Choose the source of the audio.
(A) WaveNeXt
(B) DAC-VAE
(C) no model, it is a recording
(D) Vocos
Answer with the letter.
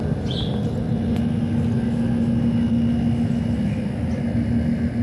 C